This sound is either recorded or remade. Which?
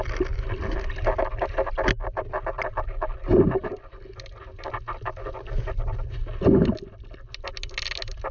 recorded